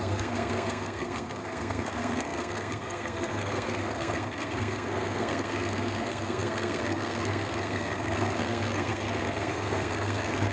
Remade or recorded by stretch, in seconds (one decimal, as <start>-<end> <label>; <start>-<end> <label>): 0.0-10.5 remade